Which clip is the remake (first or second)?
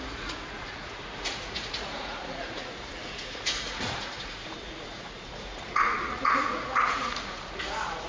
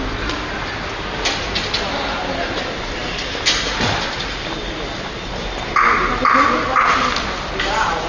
first